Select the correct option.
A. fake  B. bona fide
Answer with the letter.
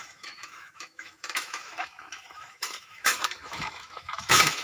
A